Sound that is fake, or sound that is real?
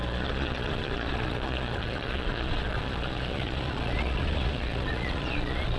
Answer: fake